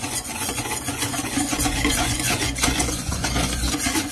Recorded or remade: remade